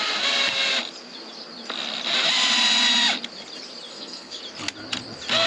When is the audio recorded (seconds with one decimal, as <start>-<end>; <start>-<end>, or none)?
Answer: 0.0-3.9; 4.4-5.5